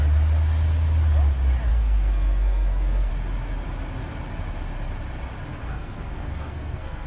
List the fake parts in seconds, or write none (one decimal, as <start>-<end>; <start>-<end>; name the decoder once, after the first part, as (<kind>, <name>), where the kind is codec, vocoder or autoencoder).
1.7-3.1 (codec, SNAC); 5.5-7.1